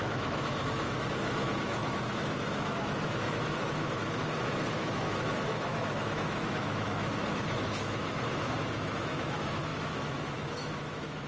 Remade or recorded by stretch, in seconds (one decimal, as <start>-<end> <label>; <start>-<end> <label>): 0.0-11.3 remade